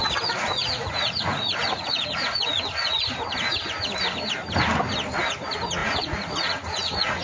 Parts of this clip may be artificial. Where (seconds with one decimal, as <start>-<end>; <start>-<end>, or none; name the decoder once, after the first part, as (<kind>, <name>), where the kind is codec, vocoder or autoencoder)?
0.6-3.0 (vocoder, Vocos); 5.8-7.2